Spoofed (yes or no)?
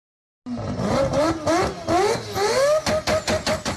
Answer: no